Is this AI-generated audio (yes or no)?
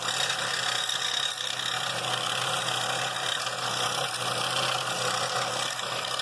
no